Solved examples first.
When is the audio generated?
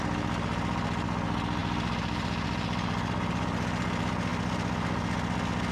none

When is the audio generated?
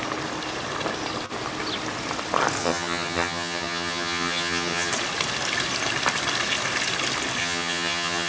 2.6-4.9 (vocoder, HiFi-GAN); 7.4-8.3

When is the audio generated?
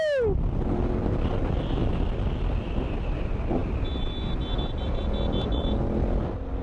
none